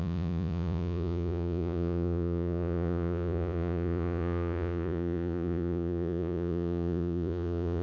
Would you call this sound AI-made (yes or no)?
yes